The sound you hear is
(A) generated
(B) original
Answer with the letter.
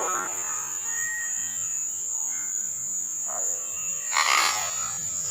B